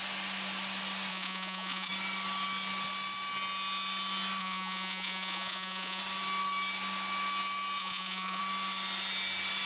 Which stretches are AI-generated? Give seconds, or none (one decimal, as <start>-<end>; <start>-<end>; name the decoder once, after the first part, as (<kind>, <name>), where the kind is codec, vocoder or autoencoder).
1.1-1.9 (vocoder, Vocos); 4.4-6.0; 7.8-8.4